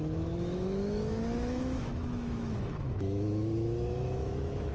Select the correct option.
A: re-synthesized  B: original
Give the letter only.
A